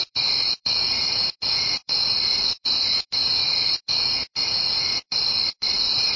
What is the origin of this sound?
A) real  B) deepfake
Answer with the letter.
B